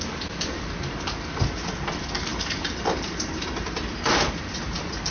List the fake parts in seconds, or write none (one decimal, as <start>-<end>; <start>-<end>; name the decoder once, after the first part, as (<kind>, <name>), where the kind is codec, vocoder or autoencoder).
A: 2.3-4.6 (vocoder, BigVGAN v2)